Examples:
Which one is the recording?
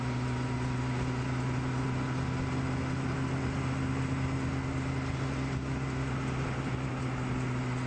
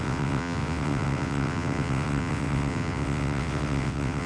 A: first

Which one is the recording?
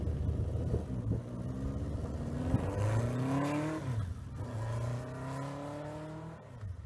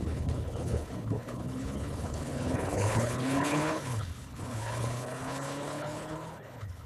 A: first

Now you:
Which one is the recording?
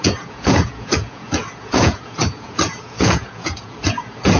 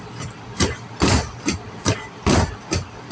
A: second